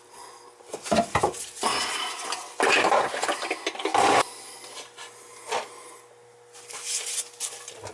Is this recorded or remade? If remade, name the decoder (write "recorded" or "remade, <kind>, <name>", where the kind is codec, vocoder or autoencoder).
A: recorded